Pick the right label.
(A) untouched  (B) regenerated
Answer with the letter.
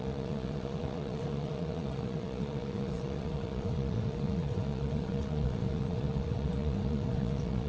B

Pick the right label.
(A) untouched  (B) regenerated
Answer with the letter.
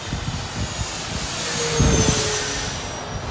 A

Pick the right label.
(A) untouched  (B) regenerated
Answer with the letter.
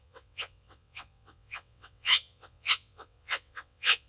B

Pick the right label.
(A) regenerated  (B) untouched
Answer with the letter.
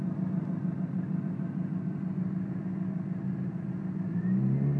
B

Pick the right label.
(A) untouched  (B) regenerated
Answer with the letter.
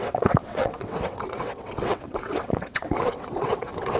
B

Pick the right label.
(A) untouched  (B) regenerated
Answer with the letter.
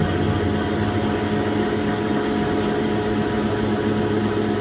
A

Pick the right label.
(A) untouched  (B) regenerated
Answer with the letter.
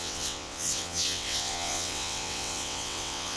B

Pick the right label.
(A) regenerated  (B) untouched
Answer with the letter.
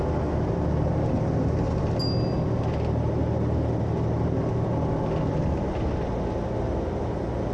B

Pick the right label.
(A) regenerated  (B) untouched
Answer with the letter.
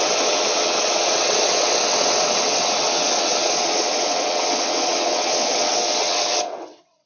A